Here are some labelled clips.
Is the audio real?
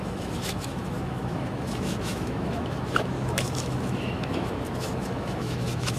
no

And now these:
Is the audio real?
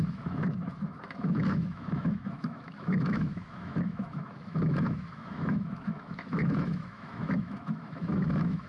no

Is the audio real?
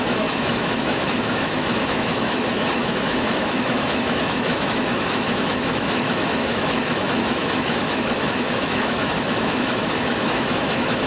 no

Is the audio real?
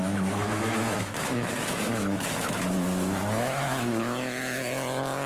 no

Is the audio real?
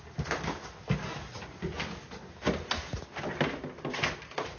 yes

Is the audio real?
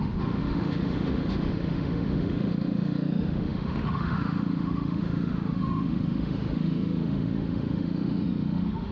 no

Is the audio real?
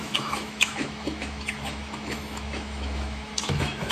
no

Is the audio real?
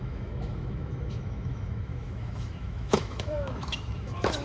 no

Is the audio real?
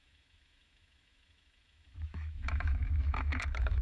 no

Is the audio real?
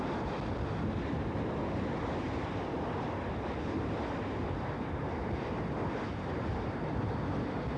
yes